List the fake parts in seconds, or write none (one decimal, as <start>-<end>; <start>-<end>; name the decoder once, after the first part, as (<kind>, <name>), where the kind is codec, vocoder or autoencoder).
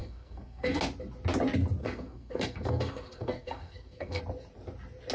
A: 0.0-0.8 (codec, SNAC); 1.8-4.2